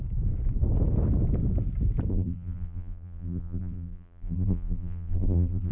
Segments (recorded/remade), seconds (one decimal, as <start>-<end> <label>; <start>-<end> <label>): 0.0-2.1 recorded; 2.1-5.7 remade